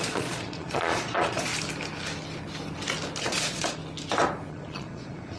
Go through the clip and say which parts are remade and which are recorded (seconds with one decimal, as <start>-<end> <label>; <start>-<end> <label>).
0.0-1.5 remade; 1.5-3.2 recorded; 3.2-3.8 remade; 3.8-4.5 recorded; 4.5-5.4 remade